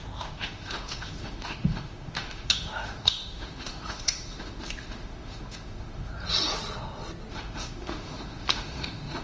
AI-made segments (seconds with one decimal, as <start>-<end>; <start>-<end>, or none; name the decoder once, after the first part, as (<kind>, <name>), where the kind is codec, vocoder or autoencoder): 0.0-6.1 (autoencoder, DAC-VAE); 7.3-9.2